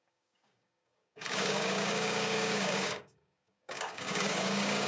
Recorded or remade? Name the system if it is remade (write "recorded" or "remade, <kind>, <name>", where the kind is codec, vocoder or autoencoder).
remade, codec, DAC